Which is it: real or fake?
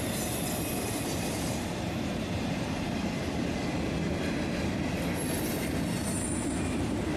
real